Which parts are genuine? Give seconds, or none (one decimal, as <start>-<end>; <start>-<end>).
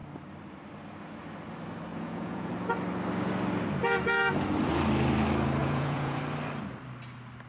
0.0-1.9; 2.5-5.6; 6.2-7.5